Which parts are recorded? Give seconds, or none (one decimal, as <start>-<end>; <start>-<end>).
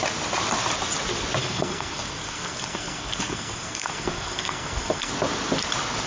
0.0-1.4; 5.1-6.1